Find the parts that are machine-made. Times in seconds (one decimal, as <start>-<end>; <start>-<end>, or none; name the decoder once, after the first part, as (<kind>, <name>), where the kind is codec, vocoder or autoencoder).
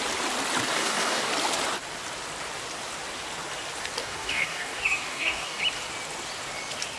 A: 0.7-1.3 (codec, DAC); 4.0-5.6